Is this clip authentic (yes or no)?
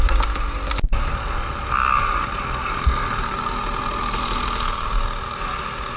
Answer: yes